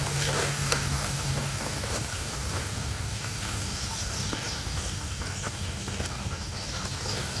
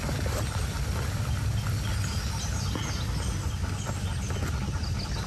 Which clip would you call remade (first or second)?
first